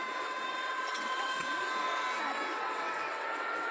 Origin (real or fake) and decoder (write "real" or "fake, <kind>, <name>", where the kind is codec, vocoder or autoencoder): fake, vocoder, WaveNeXt